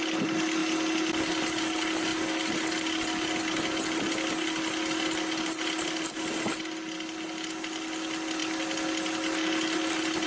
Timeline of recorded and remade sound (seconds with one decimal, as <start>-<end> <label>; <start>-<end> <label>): 0.0-10.3 recorded